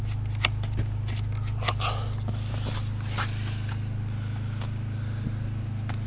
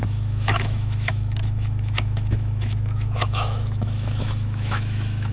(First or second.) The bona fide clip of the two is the first